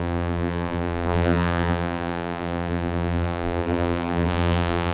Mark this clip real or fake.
fake